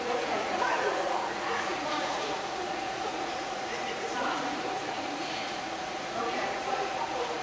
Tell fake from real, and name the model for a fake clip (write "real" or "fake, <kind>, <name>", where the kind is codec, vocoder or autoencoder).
fake, vocoder, Vocos